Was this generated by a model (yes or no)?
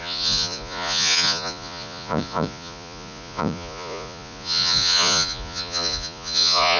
yes